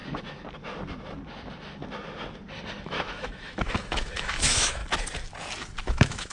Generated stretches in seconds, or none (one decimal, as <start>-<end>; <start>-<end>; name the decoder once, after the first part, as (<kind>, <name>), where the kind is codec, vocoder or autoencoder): 2.8-4.8 (autoencoder, DAC-VAE); 5.8-6.3